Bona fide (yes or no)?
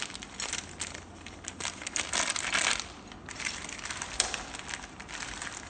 yes